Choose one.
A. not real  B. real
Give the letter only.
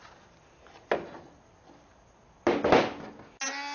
B